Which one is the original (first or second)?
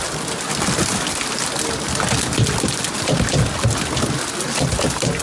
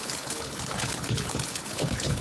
first